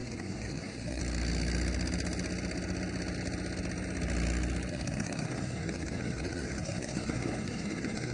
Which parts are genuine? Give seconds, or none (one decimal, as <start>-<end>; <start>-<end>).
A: 1.0-4.7